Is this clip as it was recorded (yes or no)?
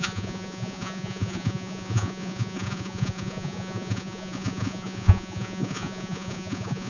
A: no